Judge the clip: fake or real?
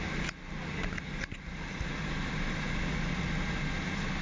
real